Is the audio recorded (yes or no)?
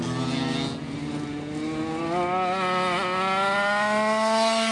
yes